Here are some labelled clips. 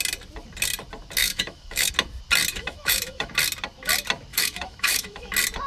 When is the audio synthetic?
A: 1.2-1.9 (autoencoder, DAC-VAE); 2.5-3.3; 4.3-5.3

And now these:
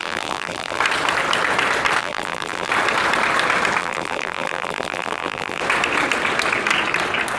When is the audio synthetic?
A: 0.0-0.8 (vocoder, BigVGAN v2); 2.0-2.7; 3.8-5.6

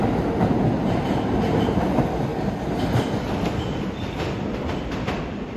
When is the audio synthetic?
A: none

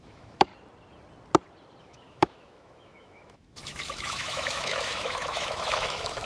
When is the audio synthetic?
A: 0.0-0.5 (autoencoder, DAC-VAE); 1.8-6.3

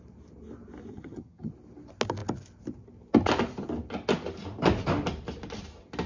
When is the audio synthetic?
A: 0.9-1.5 (vocoder, HiFi-GAN)